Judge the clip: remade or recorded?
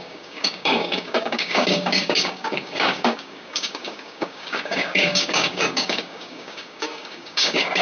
remade